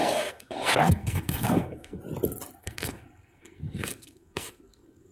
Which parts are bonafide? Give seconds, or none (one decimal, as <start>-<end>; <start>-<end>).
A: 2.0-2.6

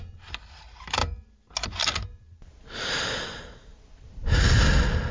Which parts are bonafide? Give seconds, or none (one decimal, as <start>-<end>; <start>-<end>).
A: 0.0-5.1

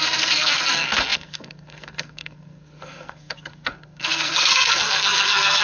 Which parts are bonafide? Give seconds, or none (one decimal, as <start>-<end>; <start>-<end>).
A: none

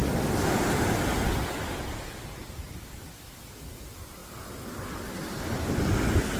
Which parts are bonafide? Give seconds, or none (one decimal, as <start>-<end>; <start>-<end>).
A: 0.0-6.4

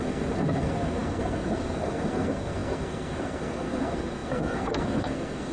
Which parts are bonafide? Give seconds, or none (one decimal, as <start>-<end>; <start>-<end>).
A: none

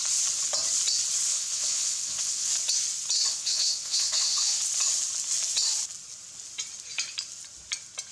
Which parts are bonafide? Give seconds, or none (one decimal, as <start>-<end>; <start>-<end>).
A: 0.0-1.3; 2.5-3.3; 4.6-8.1

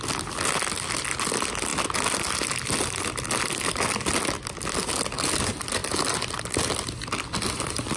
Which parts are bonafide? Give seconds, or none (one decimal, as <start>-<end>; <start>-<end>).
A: 0.0-8.0